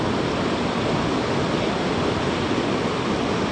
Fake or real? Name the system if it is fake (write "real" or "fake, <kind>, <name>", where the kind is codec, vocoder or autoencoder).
real